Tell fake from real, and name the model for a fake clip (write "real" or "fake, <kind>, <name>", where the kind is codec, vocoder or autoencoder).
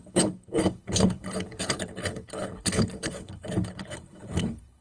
fake, codec, HILCodec